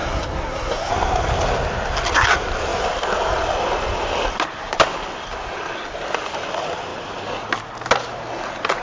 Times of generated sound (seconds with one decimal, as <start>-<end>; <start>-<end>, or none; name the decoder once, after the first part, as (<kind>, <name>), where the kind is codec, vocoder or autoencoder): 0.0-0.9 (codec, SNAC)